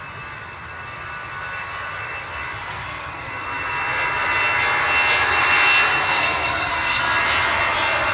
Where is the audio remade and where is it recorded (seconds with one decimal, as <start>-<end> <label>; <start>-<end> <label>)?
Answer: 0.0-2.7 recorded; 2.7-3.3 remade; 3.3-6.1 recorded; 6.1-7.0 remade; 7.0-8.1 recorded